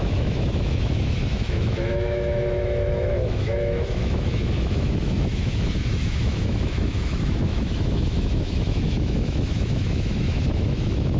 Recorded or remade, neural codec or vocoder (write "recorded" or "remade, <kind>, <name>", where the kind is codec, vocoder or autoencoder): remade, autoencoder, DAC-VAE